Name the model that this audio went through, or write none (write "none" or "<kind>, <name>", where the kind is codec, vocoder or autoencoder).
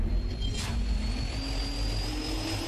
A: none